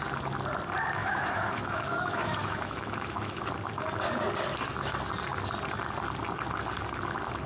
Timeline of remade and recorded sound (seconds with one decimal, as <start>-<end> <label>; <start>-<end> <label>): 0.0-1.0 recorded; 1.0-3.5 remade; 3.5-7.5 recorded